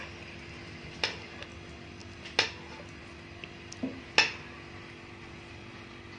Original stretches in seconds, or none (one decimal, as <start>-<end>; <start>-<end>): 0.0-6.2

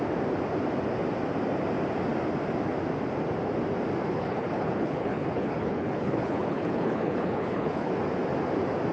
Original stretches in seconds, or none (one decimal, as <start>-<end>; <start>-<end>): 0.0-4.1; 7.9-8.9

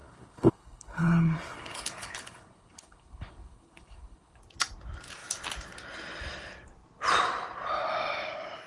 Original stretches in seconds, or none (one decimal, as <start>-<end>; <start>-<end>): 4.4-8.7

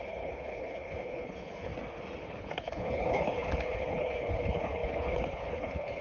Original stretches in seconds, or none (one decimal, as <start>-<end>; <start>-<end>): 1.7-2.2

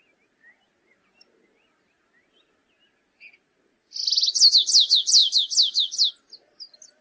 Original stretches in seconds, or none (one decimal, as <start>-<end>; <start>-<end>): 0.0-7.0

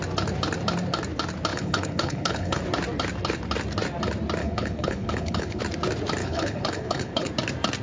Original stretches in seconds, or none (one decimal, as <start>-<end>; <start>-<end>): 0.0-1.5; 2.6-4.4; 5.6-6.2; 7.3-7.8

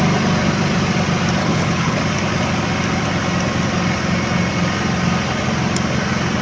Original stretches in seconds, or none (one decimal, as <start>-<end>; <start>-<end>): 0.0-1.4; 2.0-6.4